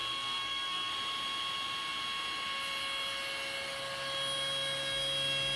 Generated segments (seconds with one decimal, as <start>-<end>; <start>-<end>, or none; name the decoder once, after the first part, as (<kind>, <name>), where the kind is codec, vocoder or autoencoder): 0.0-0.9 (codec, SNAC)